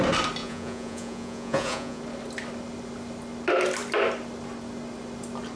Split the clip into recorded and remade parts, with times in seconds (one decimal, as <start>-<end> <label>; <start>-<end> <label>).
0.0-0.4 recorded; 0.4-2.0 remade; 2.0-5.6 recorded